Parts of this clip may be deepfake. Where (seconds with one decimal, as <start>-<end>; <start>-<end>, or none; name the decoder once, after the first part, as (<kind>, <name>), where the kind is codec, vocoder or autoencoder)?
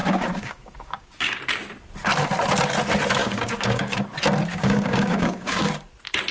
0.0-1.4 (codec, DAC); 3.2-4.0; 4.5-5.7